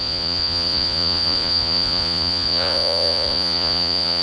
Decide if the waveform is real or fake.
fake